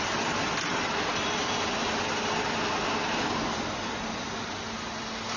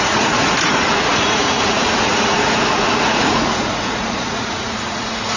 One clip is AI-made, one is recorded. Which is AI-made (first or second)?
second